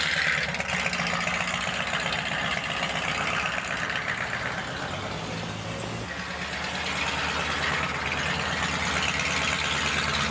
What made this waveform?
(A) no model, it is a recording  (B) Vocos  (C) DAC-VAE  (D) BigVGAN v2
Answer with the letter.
A